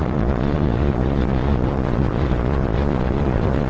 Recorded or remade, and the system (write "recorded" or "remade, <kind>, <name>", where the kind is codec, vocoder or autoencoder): remade, vocoder, Vocos